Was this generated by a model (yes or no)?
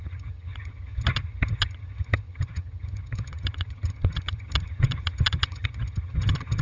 yes